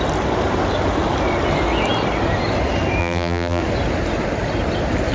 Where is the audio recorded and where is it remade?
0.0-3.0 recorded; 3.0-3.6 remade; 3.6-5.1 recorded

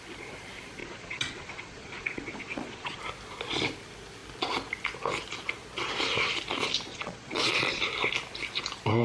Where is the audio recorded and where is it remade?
0.0-0.8 recorded; 0.8-3.0 remade; 3.0-6.9 recorded; 6.9-7.8 remade; 7.8-9.0 recorded

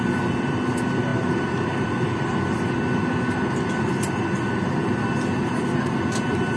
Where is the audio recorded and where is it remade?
0.0-1.1 recorded; 1.1-2.7 remade; 2.7-6.6 recorded

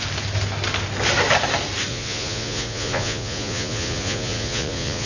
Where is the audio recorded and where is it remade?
0.0-1.9 recorded; 1.9-5.1 remade

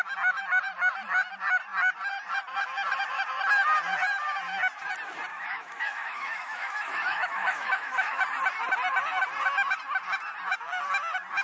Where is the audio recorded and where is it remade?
0.0-5.3 recorded; 5.3-8.2 remade; 8.2-11.4 recorded

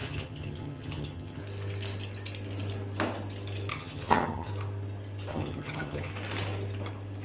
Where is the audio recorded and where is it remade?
0.0-1.4 remade; 1.4-3.7 recorded; 3.7-4.5 remade; 4.5-5.3 recorded; 5.3-6.1 remade; 6.1-7.2 recorded

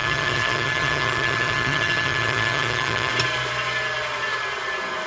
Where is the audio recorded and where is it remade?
0.0-3.1 remade; 3.1-5.1 recorded